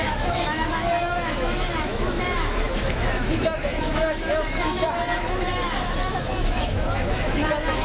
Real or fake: fake